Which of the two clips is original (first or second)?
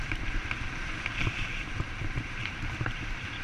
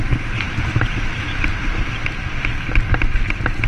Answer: second